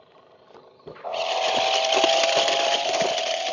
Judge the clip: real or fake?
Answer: real